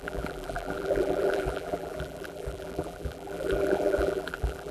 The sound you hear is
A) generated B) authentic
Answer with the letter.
A